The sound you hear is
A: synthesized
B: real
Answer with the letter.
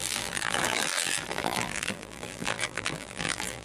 A